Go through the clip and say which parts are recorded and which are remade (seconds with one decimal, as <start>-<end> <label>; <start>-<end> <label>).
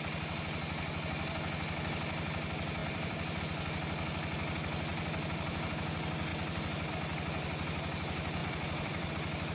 0.0-2.8 recorded; 2.8-3.4 remade; 3.4-4.9 recorded; 4.9-5.7 remade; 5.7-6.3 recorded; 6.3-6.9 remade; 6.9-8.4 recorded; 8.4-9.1 remade; 9.1-9.5 recorded